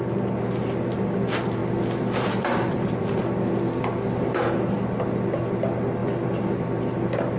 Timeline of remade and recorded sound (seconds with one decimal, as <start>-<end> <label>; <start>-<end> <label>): 0.0-1.6 recorded; 1.6-3.1 remade; 3.1-6.0 recorded; 6.0-6.6 remade; 6.6-7.4 recorded